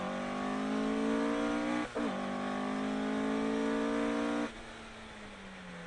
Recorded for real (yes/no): yes